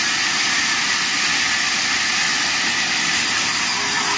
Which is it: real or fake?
real